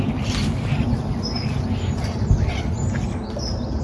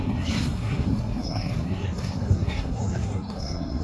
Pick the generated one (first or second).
second